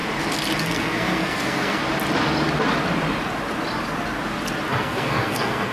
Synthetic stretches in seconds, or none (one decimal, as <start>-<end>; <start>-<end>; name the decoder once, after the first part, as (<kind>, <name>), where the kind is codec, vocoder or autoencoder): 0.6-1.8 (codec, SNAC); 4.7-5.7